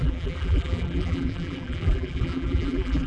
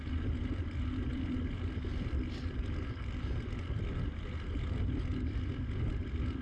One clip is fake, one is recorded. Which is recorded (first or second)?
second